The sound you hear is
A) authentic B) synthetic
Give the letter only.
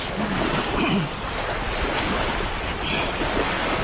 A